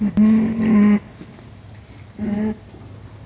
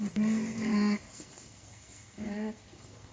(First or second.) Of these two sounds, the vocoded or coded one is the second